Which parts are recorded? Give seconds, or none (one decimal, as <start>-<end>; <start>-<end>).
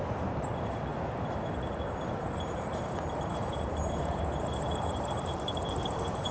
0.9-2.0